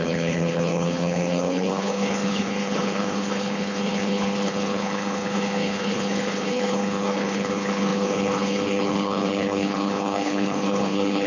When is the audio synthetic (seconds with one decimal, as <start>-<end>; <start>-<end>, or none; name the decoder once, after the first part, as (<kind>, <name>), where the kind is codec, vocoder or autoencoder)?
0.0-11.3 (codec, HILCodec)